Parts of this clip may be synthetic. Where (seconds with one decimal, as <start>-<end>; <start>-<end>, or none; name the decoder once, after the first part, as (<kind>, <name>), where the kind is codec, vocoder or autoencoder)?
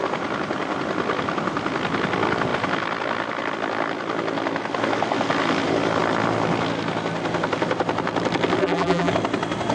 8.6-9.1 (vocoder, BigVGAN v2)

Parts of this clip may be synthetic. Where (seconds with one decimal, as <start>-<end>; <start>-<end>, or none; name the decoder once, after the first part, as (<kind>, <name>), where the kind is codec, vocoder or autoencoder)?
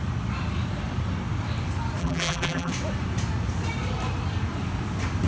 2.0-2.7 (vocoder, BigVGAN v2)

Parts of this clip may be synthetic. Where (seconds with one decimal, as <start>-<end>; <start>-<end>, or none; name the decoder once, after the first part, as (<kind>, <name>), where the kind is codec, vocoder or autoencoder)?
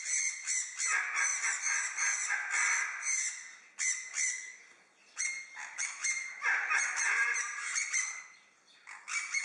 6.0-8.0 (vocoder, BigVGAN v2)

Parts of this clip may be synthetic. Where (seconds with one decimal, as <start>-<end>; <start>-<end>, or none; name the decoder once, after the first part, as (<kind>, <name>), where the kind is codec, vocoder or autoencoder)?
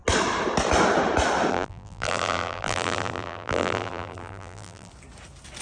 1.5-4.9 (vocoder, BigVGAN v2)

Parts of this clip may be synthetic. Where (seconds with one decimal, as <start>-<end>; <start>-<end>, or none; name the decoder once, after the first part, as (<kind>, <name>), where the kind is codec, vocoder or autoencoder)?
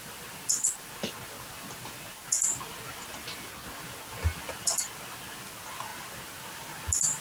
none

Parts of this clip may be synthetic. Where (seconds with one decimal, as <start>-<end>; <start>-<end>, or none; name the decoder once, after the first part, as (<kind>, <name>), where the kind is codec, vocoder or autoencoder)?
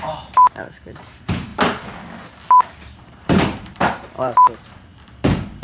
0.0-1.5 (vocoder, BigVGAN v2); 2.8-4.9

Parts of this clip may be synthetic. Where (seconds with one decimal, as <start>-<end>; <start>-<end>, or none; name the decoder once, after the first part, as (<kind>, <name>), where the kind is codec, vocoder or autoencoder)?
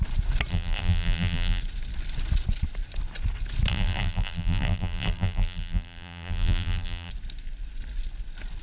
0.5-1.6 (vocoder, BigVGAN v2); 3.7-7.1